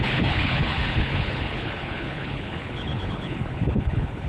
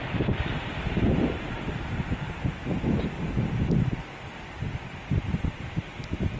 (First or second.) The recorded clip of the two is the second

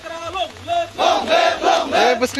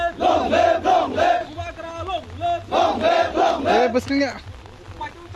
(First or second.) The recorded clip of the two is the second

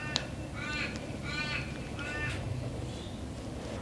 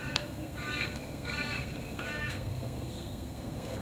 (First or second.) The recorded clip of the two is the first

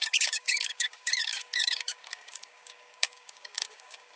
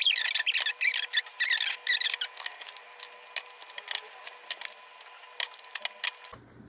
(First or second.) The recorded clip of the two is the second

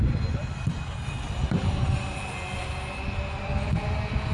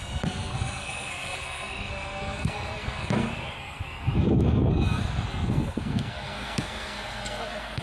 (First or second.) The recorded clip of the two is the first